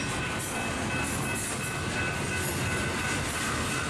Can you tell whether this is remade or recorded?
recorded